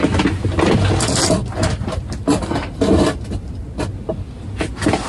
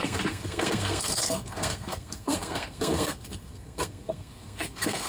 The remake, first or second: second